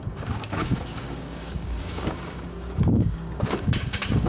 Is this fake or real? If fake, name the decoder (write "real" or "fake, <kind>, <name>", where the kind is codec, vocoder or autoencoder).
fake, codec, DAC